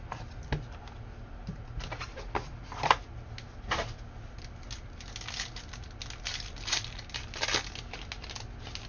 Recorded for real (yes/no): yes